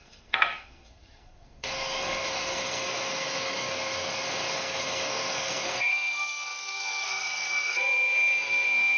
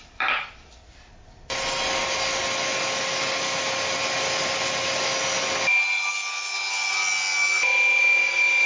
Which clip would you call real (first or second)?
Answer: second